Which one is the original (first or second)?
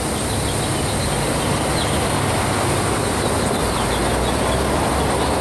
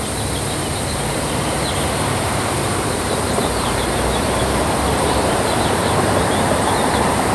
first